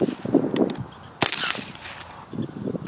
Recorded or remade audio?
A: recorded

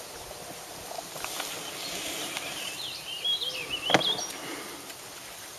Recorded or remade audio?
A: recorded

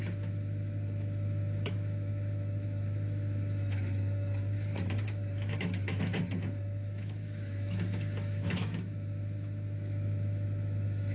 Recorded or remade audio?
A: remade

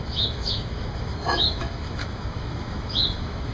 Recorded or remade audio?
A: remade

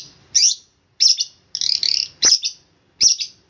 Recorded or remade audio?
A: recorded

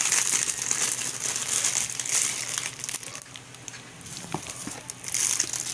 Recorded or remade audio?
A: recorded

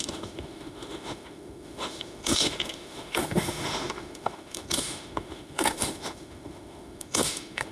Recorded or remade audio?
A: remade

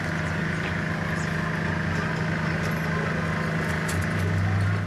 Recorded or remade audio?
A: recorded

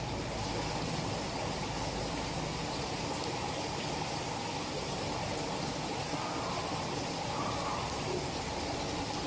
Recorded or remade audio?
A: recorded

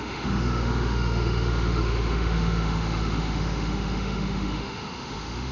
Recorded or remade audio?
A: remade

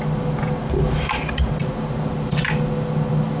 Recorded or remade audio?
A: recorded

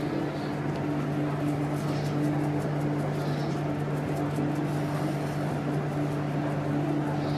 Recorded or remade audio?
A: recorded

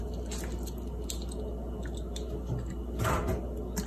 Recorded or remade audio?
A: recorded